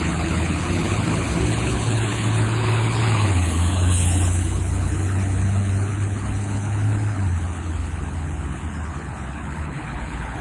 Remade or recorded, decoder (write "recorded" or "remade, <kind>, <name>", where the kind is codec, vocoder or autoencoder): remade, codec, HILCodec